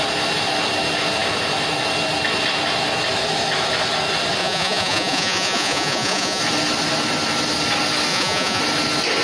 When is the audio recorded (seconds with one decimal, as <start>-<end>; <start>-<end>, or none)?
0.0-4.4; 6.4-8.1; 8.6-9.2